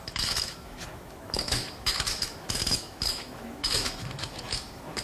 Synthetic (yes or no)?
yes